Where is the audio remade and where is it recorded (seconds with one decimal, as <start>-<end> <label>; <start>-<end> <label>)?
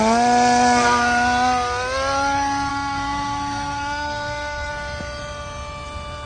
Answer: 0.0-2.7 recorded; 2.7-4.7 remade; 4.7-6.3 recorded